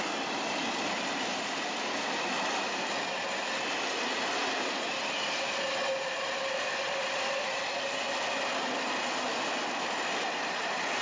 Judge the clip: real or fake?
real